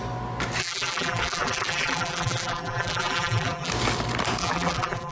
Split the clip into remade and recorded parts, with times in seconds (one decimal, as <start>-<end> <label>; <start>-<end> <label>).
0.0-0.6 recorded; 0.6-3.7 remade; 3.7-4.4 recorded; 4.4-5.1 remade